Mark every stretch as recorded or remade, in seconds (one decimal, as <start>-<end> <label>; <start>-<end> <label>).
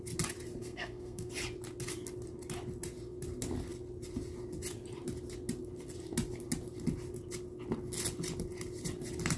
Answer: 0.0-0.6 recorded; 0.6-1.3 remade; 1.3-9.4 recorded